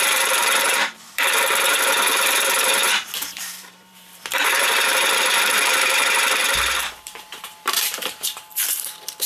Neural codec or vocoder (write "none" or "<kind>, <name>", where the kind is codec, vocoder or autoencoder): vocoder, BigVGAN v2